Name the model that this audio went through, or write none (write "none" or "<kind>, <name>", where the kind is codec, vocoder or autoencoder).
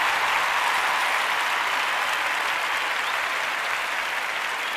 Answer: none